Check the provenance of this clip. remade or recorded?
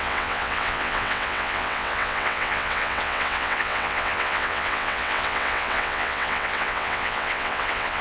remade